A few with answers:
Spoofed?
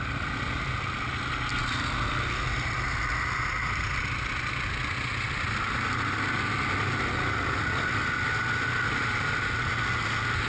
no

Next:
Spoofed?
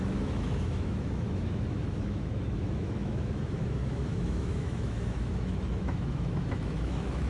yes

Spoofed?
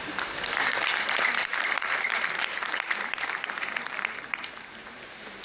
yes